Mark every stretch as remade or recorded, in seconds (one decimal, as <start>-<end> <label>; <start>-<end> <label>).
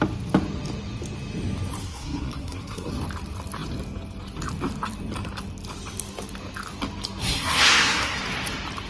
0.0-1.8 recorded; 1.8-2.9 remade; 2.9-7.2 recorded; 7.2-8.2 remade; 8.2-8.9 recorded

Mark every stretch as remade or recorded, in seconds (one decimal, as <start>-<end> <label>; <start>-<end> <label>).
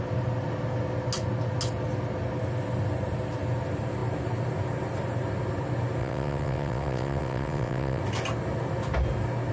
0.0-6.0 recorded; 6.0-8.0 remade; 8.0-9.5 recorded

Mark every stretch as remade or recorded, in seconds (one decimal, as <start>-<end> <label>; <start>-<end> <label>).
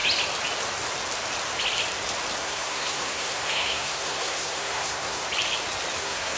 0.0-2.4 recorded; 2.4-5.2 remade; 5.2-6.0 recorded; 6.0-6.4 remade